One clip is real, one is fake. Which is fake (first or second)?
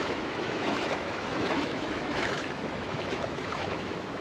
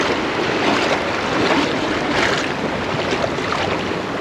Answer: first